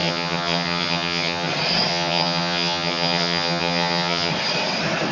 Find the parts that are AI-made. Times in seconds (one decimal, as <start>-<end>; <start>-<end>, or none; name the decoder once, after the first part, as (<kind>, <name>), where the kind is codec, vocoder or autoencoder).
0.0-1.5 (vocoder, HiFi-GAN); 1.9-4.3